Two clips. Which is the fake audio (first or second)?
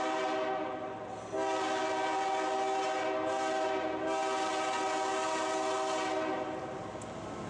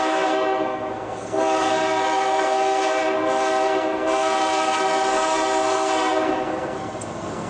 second